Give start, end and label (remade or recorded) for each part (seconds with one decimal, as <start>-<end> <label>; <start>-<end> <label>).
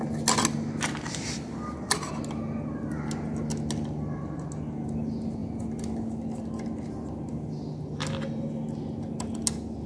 0.0-9.9 recorded